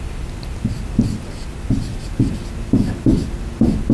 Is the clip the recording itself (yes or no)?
yes